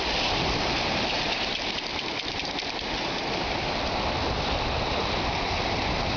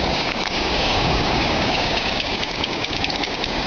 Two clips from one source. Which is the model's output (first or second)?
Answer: second